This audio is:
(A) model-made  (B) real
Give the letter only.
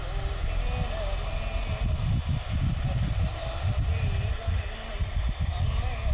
B